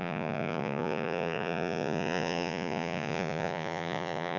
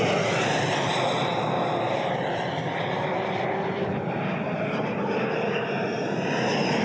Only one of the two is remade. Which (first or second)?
first